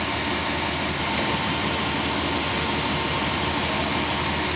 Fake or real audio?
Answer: real